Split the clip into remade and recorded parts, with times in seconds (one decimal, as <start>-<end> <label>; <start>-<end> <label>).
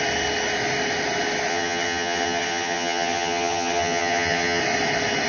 0.0-1.5 recorded; 1.5-4.6 remade; 4.6-5.3 recorded